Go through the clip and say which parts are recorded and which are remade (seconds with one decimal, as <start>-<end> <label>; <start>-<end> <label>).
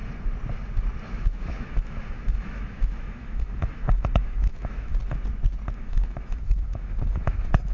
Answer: 0.0-1.1 recorded; 1.1-4.9 remade; 4.9-5.7 recorded; 5.7-7.7 remade